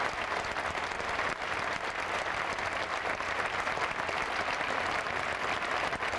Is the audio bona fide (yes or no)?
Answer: yes